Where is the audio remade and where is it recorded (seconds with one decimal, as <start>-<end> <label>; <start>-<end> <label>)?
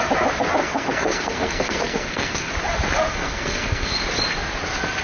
0.0-0.6 recorded; 0.6-2.5 remade; 2.5-3.1 recorded; 3.1-3.9 remade; 3.9-5.0 recorded